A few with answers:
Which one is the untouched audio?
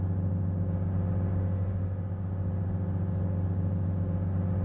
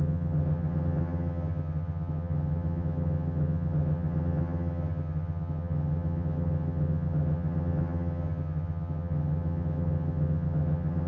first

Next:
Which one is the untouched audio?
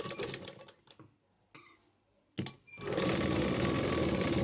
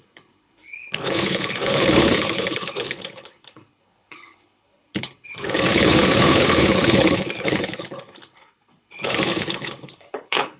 first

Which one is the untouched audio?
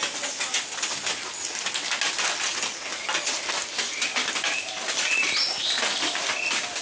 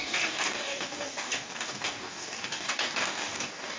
first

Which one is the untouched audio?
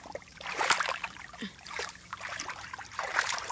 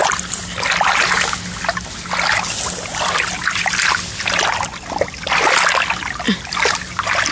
second